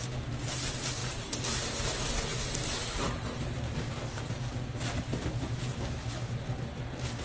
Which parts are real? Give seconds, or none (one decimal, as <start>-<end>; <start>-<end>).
0.0-7.2

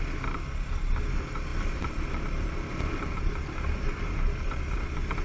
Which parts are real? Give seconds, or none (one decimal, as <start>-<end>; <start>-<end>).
0.0-1.5; 4.6-5.2

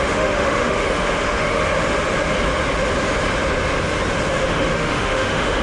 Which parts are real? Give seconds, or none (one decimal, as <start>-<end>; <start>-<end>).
1.6-4.3

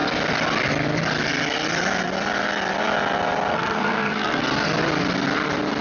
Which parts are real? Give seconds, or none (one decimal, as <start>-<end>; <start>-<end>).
0.0-3.5; 4.4-5.8

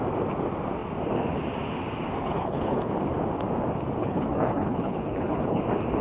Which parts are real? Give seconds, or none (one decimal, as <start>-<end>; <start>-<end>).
0.0-2.2; 2.9-4.0; 5.6-6.0

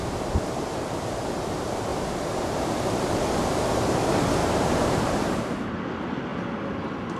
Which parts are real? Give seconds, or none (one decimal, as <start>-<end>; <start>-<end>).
0.0-1.9; 3.3-4.4; 5.4-7.2

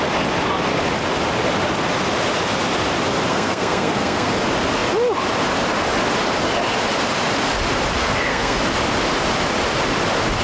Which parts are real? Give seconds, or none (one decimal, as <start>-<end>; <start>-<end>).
0.0-3.3; 4.3-8.0; 8.6-10.4